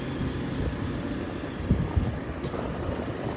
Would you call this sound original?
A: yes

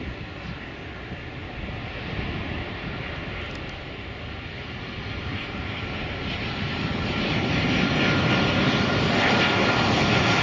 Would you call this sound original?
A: yes